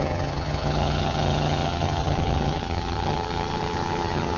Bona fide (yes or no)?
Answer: no